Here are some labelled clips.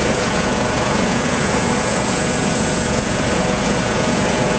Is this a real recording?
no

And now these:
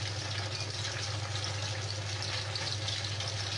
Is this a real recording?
yes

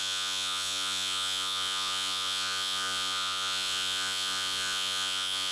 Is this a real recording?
no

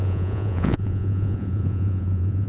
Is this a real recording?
no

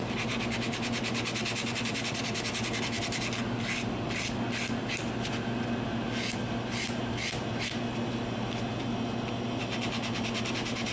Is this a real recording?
yes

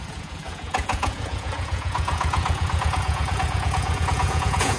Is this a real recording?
no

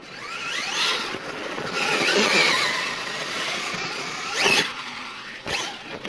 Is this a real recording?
no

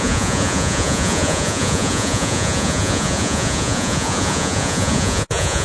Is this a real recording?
no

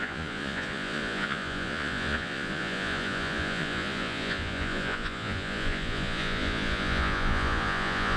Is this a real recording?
no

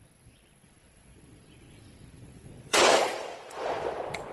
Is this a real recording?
no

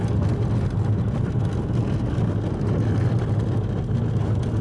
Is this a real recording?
yes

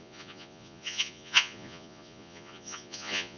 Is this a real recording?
no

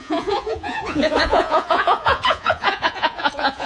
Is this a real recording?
no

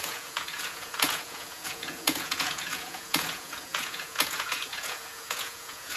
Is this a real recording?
no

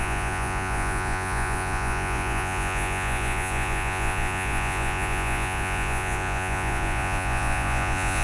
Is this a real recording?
no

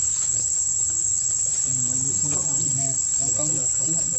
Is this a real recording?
yes